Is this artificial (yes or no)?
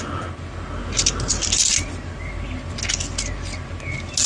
no